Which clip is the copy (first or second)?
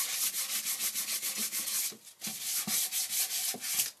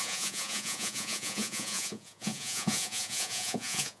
second